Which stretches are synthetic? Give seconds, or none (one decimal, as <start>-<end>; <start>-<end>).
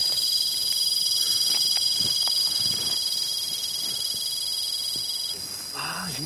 none